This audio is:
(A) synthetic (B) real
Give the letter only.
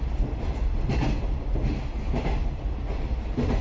B